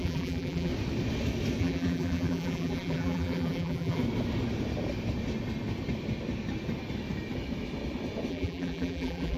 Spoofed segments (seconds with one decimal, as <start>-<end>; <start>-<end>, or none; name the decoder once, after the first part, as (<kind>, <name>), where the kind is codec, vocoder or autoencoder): 0.0-0.7 (vocoder, BigVGAN v2); 1.6-4.0; 8.3-9.4